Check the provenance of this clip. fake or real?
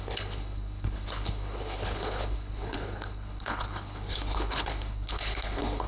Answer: fake